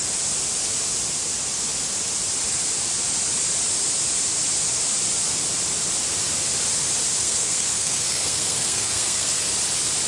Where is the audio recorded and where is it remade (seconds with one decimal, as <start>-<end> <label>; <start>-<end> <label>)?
0.0-7.2 recorded; 7.2-9.5 remade; 9.5-10.1 recorded